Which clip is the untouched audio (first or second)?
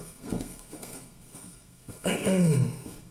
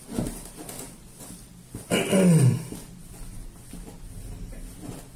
second